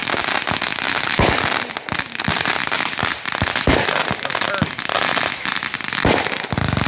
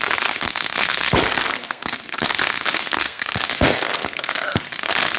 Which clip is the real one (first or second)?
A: first